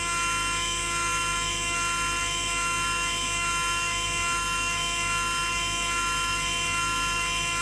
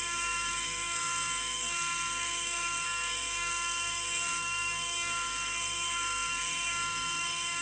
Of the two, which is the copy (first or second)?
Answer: second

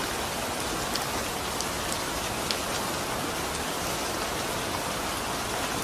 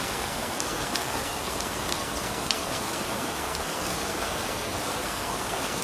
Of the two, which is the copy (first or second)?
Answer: second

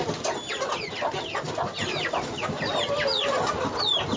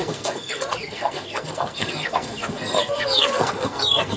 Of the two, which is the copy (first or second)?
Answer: second